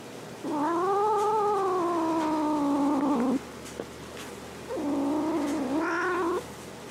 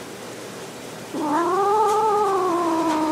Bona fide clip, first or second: first